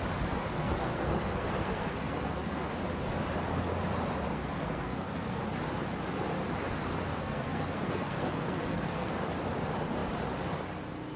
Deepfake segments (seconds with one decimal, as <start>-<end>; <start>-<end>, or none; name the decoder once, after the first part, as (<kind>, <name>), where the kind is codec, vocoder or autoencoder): 0.4-2.7 (codec, SNAC); 4.3-5.4; 7.1-9.1